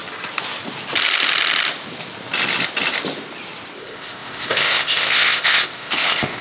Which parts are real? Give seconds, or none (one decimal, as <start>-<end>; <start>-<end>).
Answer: 0.0-3.8